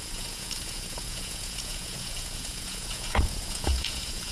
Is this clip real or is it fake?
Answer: fake